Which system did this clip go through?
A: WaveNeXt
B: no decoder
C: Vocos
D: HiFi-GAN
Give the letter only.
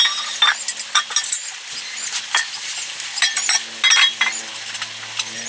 B